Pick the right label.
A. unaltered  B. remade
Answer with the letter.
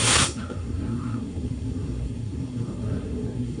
B